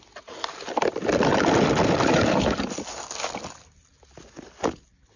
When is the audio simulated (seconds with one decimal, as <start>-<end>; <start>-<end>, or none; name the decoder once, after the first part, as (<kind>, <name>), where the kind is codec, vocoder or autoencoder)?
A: none